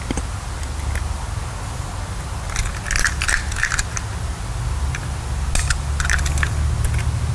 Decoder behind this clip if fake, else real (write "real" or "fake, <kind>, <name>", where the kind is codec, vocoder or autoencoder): real